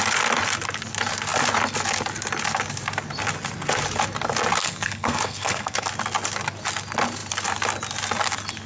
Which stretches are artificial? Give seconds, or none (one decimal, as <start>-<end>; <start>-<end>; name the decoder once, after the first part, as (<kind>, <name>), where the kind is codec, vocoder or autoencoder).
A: 4.6-5.9 (codec, SNAC)